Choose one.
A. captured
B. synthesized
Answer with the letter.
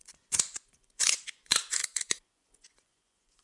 B